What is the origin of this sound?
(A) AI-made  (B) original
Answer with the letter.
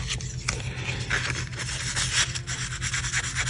B